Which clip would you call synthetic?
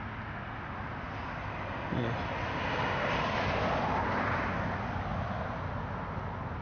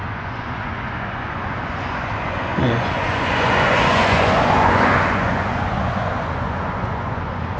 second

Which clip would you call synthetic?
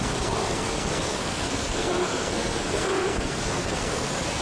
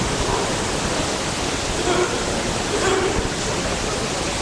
first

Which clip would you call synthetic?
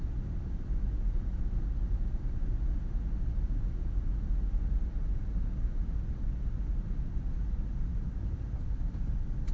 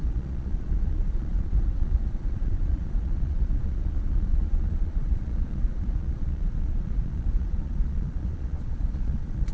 second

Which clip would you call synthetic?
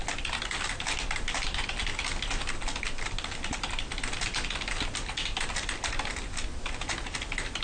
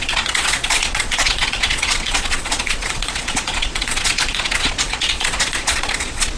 second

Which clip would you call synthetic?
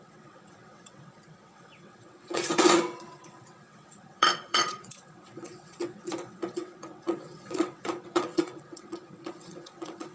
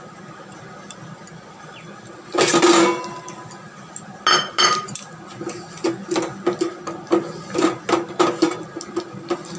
first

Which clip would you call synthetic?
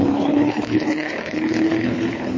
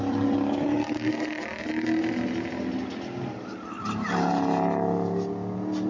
first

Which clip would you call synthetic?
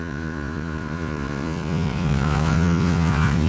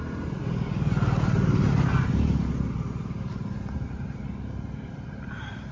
first